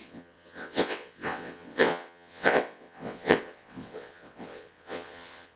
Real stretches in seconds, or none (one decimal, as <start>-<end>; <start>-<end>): none